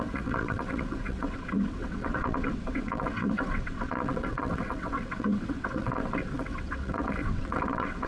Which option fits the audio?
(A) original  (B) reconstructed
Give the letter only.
B